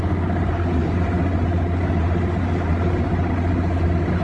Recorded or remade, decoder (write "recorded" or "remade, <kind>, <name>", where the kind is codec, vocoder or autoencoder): recorded